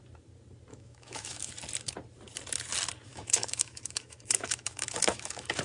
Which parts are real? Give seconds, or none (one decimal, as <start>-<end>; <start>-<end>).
0.0-0.7; 1.5-3.1